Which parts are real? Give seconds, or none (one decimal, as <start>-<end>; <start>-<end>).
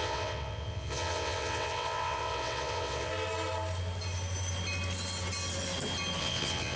3.1-6.2